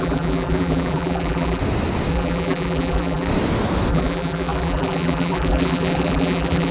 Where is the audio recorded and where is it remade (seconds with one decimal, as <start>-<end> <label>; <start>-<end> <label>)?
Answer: 0.0-1.6 remade; 1.6-2.1 recorded; 2.1-3.3 remade; 3.3-3.9 recorded; 3.9-6.7 remade